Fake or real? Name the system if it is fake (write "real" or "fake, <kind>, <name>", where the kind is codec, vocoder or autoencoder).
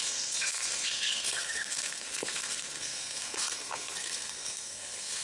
fake, codec, SNAC